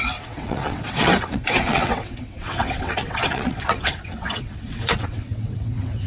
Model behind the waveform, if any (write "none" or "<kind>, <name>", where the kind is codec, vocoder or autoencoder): vocoder, WaveNeXt